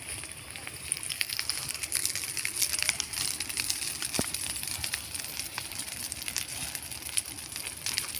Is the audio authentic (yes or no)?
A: no